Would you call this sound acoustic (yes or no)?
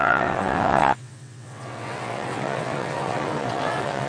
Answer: no